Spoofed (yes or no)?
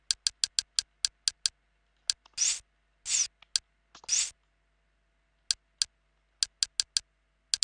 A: no